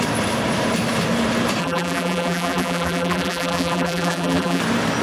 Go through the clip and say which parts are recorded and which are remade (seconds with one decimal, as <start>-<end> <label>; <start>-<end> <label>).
0.0-1.6 recorded; 1.6-4.6 remade; 4.6-5.0 recorded